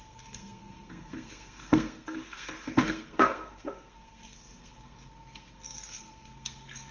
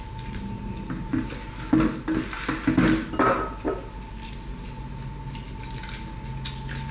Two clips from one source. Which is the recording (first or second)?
second